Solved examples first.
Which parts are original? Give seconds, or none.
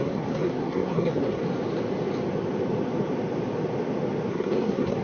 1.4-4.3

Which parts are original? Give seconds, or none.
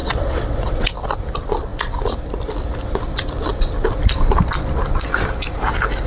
0.9-6.1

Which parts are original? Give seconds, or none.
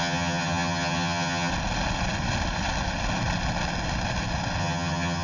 1.5-4.6